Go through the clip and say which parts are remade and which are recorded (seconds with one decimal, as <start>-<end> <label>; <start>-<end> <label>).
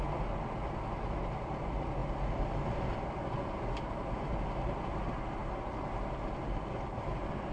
0.0-7.5 recorded